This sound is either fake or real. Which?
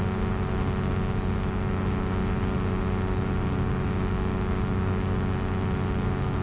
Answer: real